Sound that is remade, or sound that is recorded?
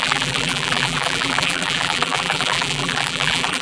remade